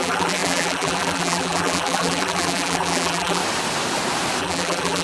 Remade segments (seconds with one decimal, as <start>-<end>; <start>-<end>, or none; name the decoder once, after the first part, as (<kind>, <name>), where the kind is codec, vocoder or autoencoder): 0.0-3.4 (vocoder, BigVGAN v2); 4.4-5.0